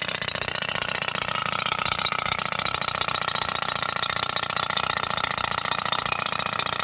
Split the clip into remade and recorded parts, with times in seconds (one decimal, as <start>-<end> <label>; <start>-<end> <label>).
0.0-6.8 recorded